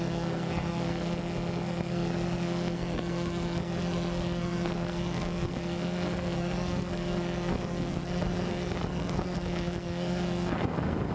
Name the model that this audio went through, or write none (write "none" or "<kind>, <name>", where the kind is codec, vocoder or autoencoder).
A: codec, SNAC